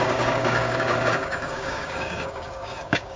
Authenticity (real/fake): fake